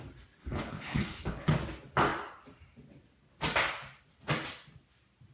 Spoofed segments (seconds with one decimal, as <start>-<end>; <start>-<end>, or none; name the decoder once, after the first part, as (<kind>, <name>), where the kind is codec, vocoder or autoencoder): 0.4-1.5 (codec, HILCodec)